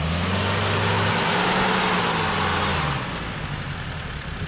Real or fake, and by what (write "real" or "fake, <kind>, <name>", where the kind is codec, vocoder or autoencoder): real